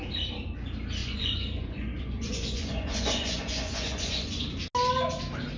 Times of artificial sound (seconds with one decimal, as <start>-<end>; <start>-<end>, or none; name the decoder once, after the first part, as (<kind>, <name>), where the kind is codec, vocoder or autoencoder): 1.0-4.4 (vocoder, Vocos)